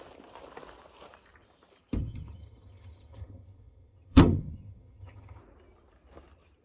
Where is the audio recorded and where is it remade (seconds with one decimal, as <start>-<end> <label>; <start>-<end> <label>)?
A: 0.0-2.0 recorded; 2.0-5.4 remade; 5.4-6.6 recorded